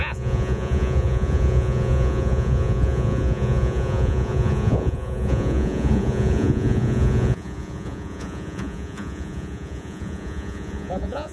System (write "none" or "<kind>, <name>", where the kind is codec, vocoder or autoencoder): vocoder, Vocos